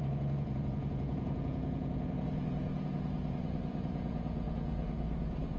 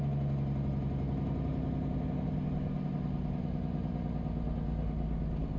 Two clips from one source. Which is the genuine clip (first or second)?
second